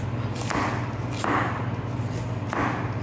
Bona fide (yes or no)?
yes